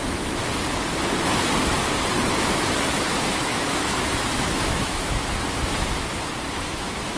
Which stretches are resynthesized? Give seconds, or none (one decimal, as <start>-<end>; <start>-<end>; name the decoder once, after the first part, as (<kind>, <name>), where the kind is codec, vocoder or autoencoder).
0.0-0.4 (autoencoder, DAC-VAE); 3.0-5.2; 6.6-7.2